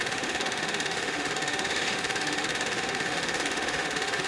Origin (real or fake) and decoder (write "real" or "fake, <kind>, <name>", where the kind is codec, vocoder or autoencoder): fake, autoencoder, DAC-VAE